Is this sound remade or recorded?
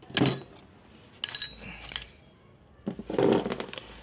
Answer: recorded